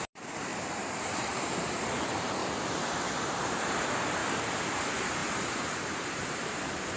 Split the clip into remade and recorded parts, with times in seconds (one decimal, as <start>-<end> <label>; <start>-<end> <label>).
0.0-0.5 remade; 0.5-1.0 recorded; 1.0-4.2 remade; 4.2-4.8 recorded; 4.8-7.0 remade